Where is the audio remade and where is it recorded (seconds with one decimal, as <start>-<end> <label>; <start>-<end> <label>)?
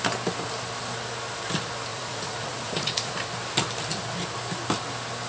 0.0-1.9 recorded; 1.9-3.1 remade; 3.1-5.3 recorded